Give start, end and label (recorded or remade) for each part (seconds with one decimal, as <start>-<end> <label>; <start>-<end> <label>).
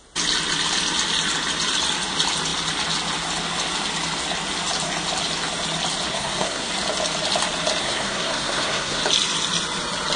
0.0-6.1 recorded; 6.1-6.7 remade; 6.7-7.8 recorded; 7.8-9.0 remade; 9.0-10.2 recorded